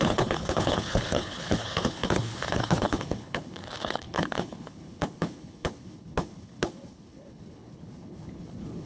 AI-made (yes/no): yes